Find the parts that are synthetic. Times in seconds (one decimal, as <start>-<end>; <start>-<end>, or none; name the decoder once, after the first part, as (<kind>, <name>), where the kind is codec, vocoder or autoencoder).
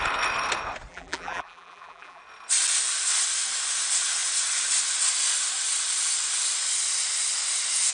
0.9-2.2 (vocoder, BigVGAN v2)